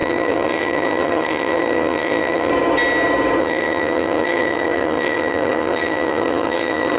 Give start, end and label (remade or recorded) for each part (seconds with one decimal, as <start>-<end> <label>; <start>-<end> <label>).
0.0-2.5 remade; 2.5-3.4 recorded; 3.4-7.0 remade